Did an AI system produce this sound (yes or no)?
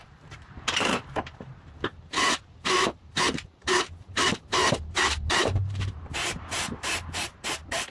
yes